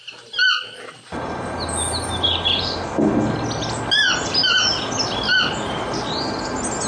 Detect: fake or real real